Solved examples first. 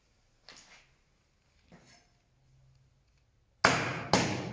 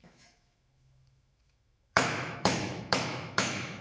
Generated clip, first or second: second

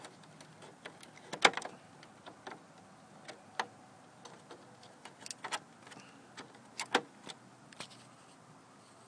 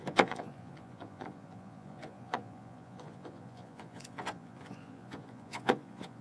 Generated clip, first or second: second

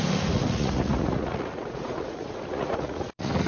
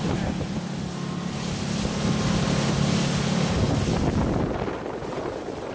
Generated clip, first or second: first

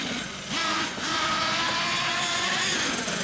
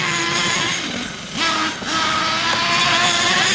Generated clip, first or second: first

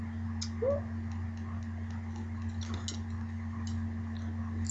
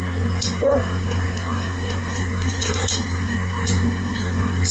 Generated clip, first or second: second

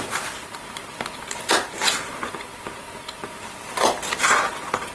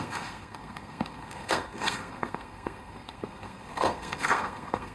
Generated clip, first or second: second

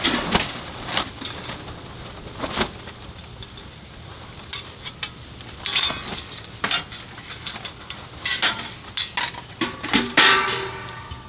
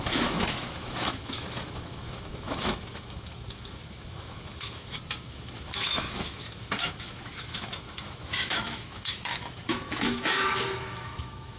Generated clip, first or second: second